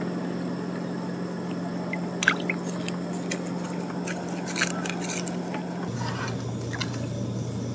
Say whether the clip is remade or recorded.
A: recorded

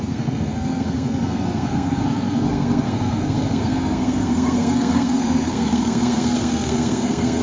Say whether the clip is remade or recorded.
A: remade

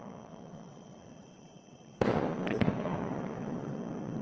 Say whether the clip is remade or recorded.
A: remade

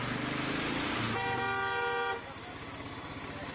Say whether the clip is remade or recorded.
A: recorded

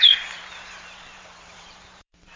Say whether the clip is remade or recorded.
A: remade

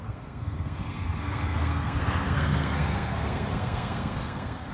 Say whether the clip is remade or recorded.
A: remade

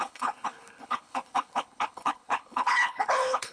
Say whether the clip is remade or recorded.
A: remade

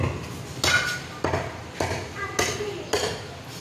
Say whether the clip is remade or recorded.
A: recorded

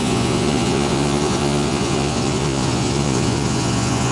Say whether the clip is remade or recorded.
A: remade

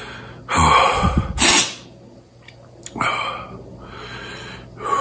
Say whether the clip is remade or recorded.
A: recorded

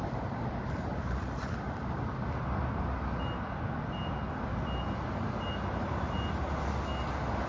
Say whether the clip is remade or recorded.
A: recorded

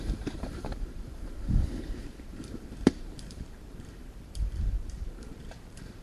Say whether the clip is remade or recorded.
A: remade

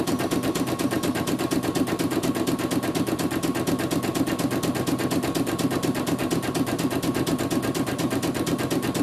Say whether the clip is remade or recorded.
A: recorded